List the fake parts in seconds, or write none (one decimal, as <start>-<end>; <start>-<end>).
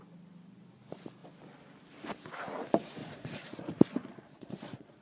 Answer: 3.0-3.6; 4.0-5.0